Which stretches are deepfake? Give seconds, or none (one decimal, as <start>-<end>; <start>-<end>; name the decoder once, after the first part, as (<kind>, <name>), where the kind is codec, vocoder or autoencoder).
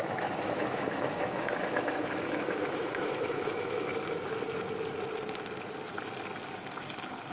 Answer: 0.0-3.9 (autoencoder, DAC-VAE)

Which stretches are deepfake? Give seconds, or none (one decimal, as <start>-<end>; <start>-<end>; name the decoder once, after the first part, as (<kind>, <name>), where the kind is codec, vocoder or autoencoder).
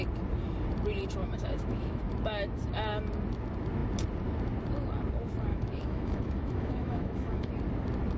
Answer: 1.2-2.1 (autoencoder, DAC-VAE); 5.5-7.5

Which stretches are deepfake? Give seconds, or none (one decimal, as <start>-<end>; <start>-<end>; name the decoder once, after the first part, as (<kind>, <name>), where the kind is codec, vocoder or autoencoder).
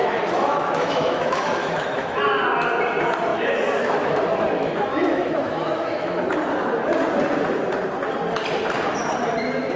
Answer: 0.0-2.2 (autoencoder, DAC-VAE); 3.3-6.2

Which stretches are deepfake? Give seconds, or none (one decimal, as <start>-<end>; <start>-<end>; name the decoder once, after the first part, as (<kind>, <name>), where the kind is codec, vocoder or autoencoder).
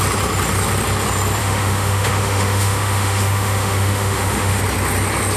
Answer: 1.4-4.6 (autoencoder, DAC-VAE)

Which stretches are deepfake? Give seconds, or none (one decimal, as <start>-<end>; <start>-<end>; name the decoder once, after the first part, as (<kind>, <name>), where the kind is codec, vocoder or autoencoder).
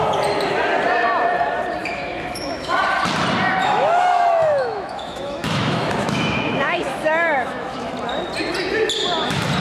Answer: 1.8-2.8 (autoencoder, DAC-VAE); 3.6-7.9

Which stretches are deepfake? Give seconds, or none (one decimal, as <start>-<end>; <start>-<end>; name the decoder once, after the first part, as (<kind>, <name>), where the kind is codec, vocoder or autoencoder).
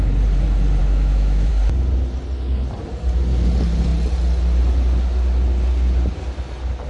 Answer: 0.8-1.5 (autoencoder, DAC-VAE)